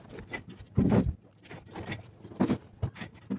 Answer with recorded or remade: recorded